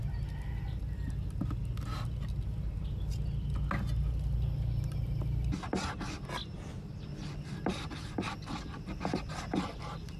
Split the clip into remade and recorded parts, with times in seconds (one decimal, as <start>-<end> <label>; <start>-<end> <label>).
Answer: 0.0-10.2 recorded